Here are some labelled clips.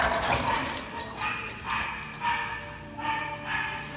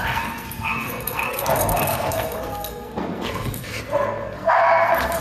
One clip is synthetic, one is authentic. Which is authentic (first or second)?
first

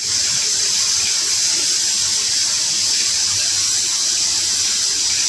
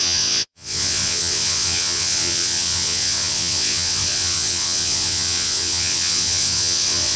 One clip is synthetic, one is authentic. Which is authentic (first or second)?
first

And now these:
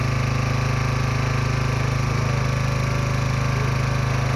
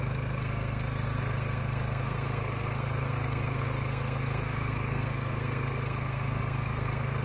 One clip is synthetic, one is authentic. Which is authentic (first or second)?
first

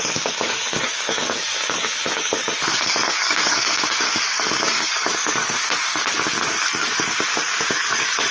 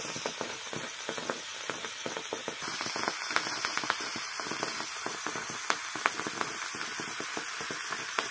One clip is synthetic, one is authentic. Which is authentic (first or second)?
second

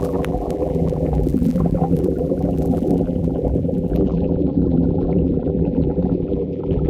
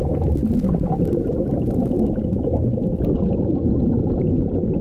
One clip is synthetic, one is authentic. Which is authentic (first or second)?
second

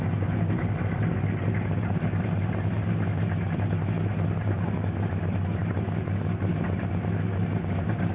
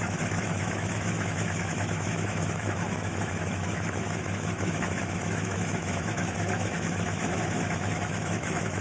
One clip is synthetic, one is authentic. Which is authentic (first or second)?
first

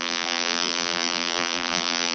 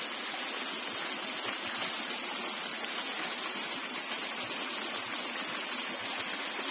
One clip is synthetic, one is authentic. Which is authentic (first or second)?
second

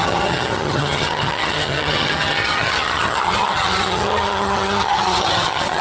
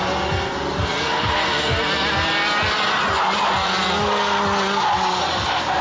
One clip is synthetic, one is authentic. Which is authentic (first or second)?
second